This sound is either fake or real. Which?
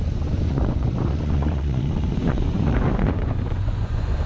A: fake